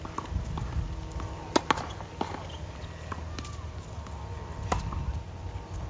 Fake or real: real